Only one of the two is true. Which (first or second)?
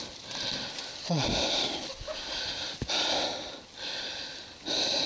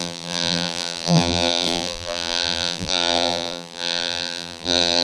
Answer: first